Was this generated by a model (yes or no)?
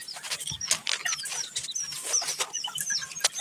no